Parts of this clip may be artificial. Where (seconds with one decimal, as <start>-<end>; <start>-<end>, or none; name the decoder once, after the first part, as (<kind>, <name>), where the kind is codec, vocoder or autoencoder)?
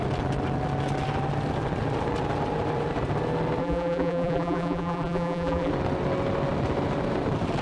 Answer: 3.6-5.7 (vocoder, BigVGAN v2)